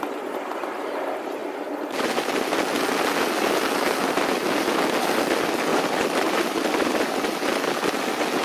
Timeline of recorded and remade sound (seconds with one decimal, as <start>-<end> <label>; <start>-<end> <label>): 0.0-5.7 recorded; 5.7-7.1 remade; 7.1-8.4 recorded